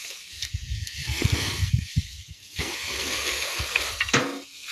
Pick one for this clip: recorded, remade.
remade